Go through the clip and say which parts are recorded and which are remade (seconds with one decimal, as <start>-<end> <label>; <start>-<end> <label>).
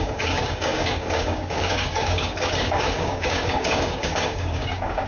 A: 0.0-5.1 remade